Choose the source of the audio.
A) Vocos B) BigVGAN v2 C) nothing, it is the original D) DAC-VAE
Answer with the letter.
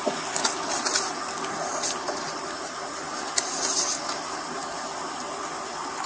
C